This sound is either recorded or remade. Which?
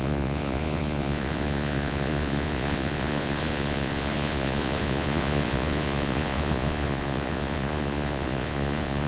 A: remade